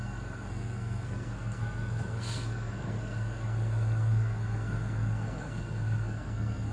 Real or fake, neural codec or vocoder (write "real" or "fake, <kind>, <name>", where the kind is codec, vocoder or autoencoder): fake, codec, SNAC